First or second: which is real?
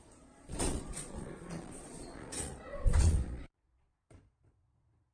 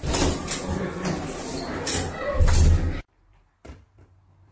second